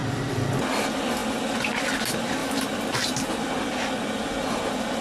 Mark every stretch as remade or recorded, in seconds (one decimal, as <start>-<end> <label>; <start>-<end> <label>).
0.0-2.4 recorded; 2.4-3.3 remade; 3.3-5.0 recorded